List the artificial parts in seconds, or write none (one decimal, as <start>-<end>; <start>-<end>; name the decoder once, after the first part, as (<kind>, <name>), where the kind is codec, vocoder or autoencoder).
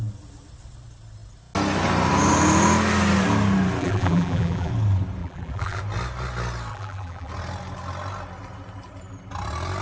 3.8-4.7 (vocoder, BigVGAN v2); 5.2-5.8; 6.7-7.3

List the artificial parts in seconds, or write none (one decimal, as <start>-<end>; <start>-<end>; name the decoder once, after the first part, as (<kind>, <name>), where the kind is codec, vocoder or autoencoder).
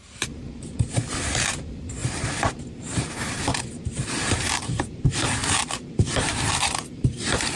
0.0-7.6 (vocoder, BigVGAN v2)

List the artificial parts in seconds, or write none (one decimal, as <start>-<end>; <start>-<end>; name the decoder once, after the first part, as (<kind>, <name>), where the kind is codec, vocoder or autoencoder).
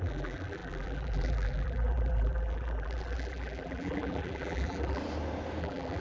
0.0-5.0 (vocoder, BigVGAN v2); 5.6-6.0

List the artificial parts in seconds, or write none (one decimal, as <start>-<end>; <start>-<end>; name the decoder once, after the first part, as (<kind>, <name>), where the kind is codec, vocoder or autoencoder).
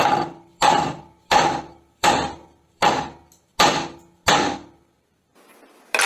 0.5-2.9 (vocoder, BigVGAN v2)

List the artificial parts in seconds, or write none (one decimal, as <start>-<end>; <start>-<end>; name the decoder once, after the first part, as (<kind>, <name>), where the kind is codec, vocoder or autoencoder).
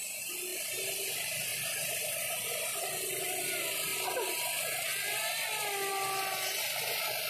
0.5-1.1 (vocoder, BigVGAN v2); 1.5-2.5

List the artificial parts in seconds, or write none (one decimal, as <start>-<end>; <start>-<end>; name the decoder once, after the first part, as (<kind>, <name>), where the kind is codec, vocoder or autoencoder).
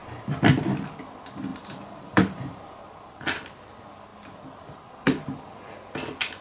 1.5-2.6 (vocoder, BigVGAN v2)